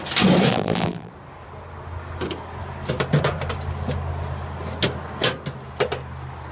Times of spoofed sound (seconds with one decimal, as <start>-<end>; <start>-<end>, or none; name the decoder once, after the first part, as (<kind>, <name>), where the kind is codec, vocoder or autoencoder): 0.5-1.1 (vocoder, BigVGAN v2)